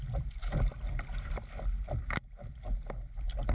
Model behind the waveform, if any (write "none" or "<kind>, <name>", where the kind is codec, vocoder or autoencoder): none